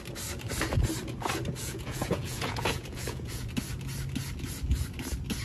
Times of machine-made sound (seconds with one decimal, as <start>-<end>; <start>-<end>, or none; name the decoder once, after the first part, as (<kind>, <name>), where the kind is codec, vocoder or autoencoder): 1.6-3.4 (vocoder, Vocos)